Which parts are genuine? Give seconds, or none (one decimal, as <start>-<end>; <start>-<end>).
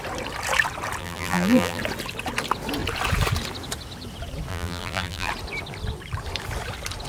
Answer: 0.0-1.0; 1.8-4.5; 5.3-7.1